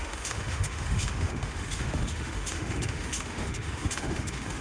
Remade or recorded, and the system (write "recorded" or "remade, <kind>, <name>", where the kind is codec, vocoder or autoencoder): remade, autoencoder, DAC-VAE